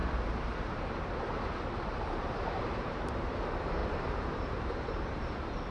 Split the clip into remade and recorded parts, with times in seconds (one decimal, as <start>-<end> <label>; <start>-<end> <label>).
0.0-3.4 remade; 3.4-3.8 recorded; 3.8-5.2 remade; 5.2-5.7 recorded